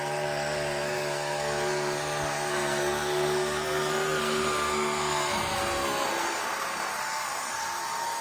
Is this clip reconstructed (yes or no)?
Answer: yes